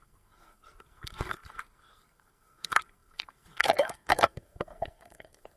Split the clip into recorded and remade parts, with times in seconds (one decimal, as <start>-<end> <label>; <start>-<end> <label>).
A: 0.0-5.6 remade